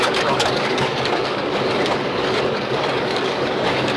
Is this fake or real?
fake